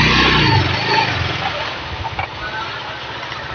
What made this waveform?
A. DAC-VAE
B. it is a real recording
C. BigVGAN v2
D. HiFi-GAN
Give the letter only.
B